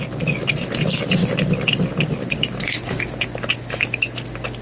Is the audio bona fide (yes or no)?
no